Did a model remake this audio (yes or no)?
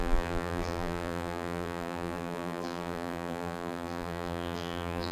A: yes